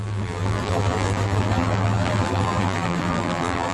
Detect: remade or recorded remade